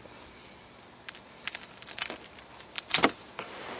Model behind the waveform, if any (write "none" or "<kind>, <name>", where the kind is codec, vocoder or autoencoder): none